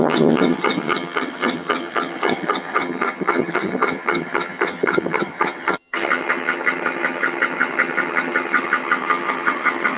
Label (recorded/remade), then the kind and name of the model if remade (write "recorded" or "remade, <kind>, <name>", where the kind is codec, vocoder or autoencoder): remade, vocoder, HiFi-GAN